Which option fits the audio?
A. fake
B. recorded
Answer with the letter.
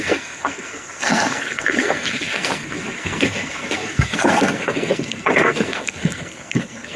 A